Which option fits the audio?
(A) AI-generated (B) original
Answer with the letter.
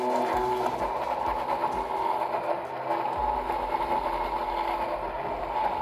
B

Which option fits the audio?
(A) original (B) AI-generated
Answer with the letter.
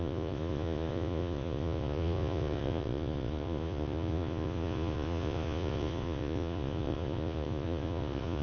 B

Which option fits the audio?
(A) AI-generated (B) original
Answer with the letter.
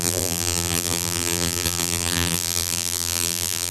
A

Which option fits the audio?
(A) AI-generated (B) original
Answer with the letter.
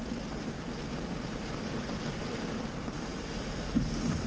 B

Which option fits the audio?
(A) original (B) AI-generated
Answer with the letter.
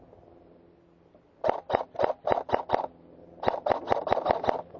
A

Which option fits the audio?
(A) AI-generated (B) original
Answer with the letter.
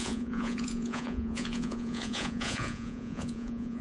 A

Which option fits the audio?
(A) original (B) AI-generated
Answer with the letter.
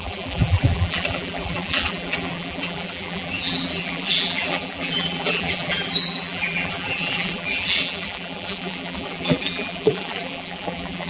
B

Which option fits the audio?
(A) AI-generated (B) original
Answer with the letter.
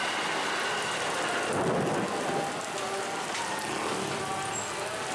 B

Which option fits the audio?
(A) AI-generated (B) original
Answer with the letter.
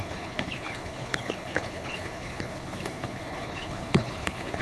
A